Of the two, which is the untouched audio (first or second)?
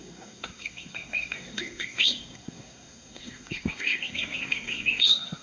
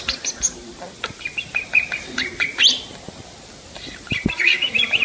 second